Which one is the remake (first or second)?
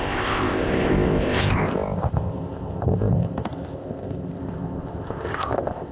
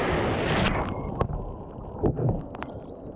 first